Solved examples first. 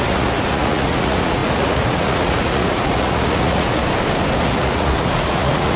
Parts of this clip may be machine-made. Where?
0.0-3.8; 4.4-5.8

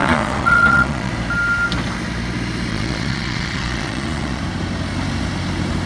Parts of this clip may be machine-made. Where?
0.0-1.1; 2.7-4.4

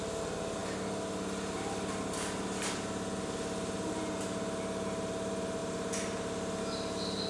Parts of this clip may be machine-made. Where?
none

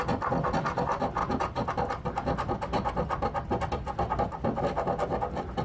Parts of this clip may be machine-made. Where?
none

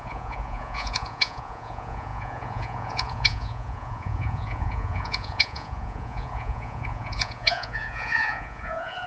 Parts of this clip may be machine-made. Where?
0.0-9.1

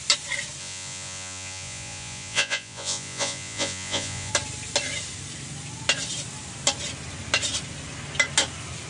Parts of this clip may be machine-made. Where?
0.6-4.3